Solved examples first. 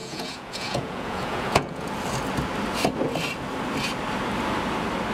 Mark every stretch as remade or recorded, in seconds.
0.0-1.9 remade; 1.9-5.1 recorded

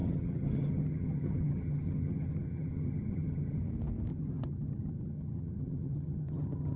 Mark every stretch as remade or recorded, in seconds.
0.0-3.6 remade; 3.6-4.1 recorded; 4.1-6.8 remade

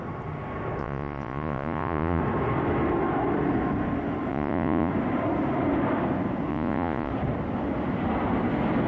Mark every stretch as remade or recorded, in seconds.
0.0-0.8 recorded; 0.8-2.2 remade; 2.2-4.3 recorded; 4.3-4.9 remade; 4.9-6.5 recorded; 6.5-7.1 remade; 7.1-8.9 recorded

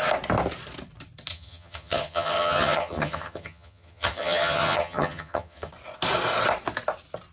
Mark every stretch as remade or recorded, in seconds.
0.0-1.3 recorded; 1.3-5.7 remade; 5.7-7.3 recorded

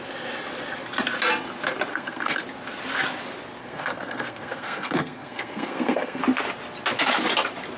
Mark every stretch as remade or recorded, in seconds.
0.0-1.9 recorded; 1.9-2.4 remade; 2.4-3.6 recorded; 3.6-6.2 remade; 6.2-7.8 recorded

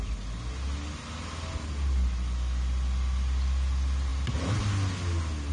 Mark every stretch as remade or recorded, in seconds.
0.0-5.5 recorded